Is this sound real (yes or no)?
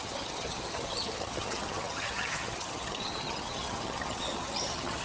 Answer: no